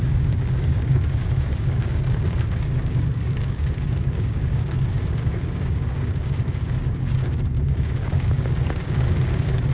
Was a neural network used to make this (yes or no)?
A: yes